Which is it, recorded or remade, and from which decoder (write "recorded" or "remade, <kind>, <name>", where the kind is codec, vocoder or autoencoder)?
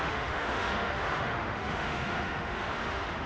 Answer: remade, autoencoder, DAC-VAE